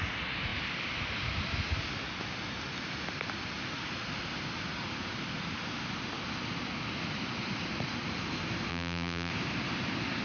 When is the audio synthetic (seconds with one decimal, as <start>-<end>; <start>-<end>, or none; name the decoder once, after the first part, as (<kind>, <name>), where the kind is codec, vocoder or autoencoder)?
8.7-9.3 (vocoder, BigVGAN v2)